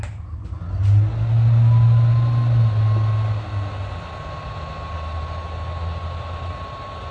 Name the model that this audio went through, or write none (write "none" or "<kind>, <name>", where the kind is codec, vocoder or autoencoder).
none